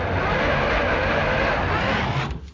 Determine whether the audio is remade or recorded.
recorded